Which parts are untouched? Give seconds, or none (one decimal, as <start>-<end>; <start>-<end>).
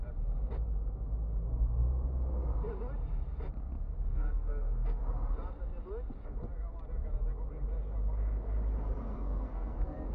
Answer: 0.0-4.1; 5.0-9.1